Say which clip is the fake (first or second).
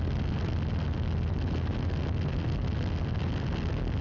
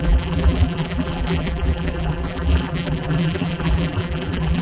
second